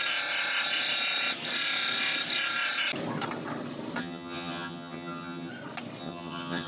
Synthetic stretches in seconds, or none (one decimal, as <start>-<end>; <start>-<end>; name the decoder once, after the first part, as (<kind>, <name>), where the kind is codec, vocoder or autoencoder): 4.0-5.5 (vocoder, HiFi-GAN); 6.0-6.7